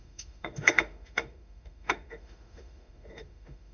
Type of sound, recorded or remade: remade